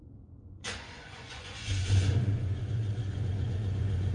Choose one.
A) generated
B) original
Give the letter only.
A